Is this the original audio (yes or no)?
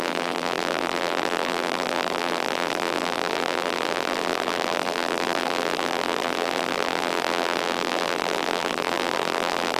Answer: no